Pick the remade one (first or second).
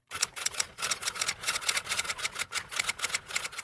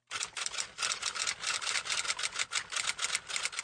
first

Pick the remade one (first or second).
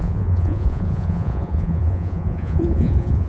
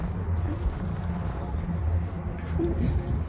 first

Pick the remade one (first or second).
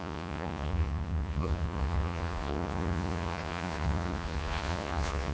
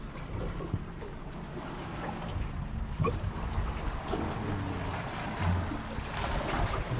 first